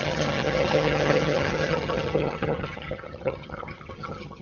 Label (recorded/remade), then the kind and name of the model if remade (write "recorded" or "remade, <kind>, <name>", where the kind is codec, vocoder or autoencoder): remade, vocoder, HiFi-GAN